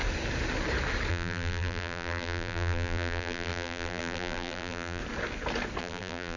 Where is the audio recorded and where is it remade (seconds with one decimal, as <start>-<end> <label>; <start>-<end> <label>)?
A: 0.0-1.1 recorded; 1.1-5.0 remade; 5.0-5.8 recorded; 5.8-6.4 remade